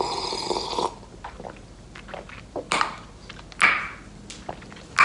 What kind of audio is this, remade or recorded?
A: recorded